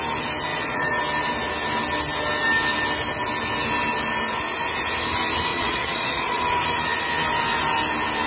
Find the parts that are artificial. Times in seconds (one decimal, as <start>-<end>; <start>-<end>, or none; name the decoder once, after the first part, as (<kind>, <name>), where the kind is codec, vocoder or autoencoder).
0.5-1.0 (vocoder, Vocos); 5.5-6.4